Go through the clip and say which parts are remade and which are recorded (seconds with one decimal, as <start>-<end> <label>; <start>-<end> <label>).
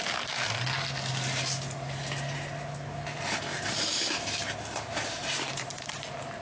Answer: 0.0-6.4 recorded